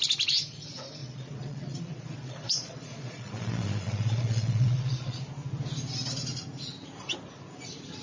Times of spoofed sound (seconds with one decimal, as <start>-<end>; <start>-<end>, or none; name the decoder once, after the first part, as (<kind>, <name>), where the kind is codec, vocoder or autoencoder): 1.0-5.2 (vocoder, Vocos)